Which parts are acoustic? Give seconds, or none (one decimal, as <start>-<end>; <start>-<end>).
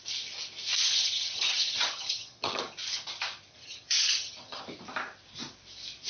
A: 0.0-0.8; 2.6-3.5; 4.6-6.1